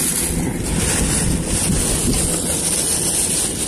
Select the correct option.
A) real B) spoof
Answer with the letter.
A